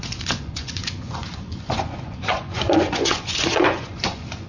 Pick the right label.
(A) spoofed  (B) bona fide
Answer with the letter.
A